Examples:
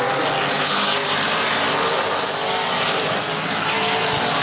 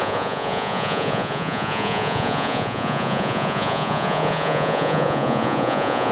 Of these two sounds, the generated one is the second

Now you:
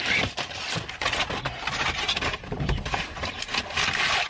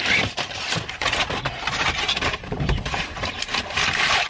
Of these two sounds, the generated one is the second